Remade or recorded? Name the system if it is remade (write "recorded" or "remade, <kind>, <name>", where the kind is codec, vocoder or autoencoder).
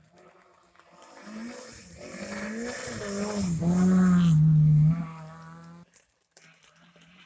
recorded